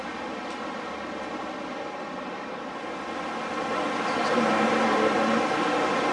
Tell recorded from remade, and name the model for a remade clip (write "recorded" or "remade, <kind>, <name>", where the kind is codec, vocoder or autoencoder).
recorded